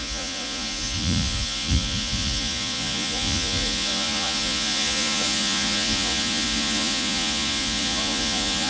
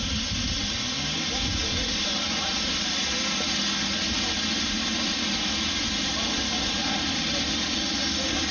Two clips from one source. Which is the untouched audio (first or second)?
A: second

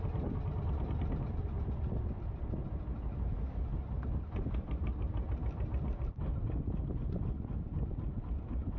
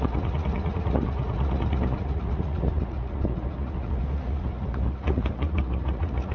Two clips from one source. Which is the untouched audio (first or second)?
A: first